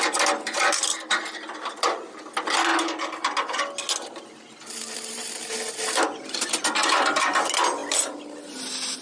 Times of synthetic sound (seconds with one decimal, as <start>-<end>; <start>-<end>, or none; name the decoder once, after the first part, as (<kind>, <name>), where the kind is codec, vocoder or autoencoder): 0.0-2.7 (vocoder, BigVGAN v2); 4.2-7.8